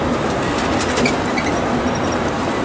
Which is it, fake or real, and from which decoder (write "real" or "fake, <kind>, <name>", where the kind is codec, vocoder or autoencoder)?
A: real